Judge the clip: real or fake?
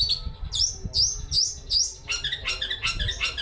real